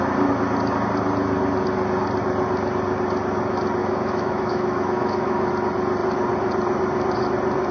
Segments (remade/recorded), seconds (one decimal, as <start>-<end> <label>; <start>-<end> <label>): 0.0-3.8 recorded; 3.8-5.5 remade; 5.5-7.7 recorded